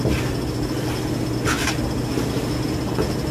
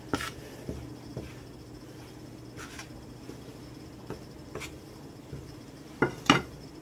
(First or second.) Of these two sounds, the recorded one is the first